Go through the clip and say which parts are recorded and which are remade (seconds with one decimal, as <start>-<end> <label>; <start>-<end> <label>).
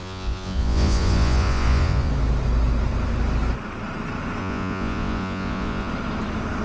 0.0-2.1 remade; 2.1-4.4 recorded; 4.4-5.9 remade; 5.9-6.6 recorded